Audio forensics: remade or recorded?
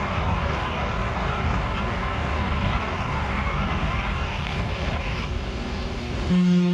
remade